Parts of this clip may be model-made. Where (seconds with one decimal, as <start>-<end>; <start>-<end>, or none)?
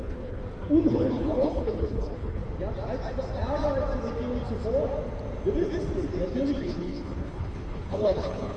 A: 0.0-0.4; 0.9-2.4; 6.6-8.6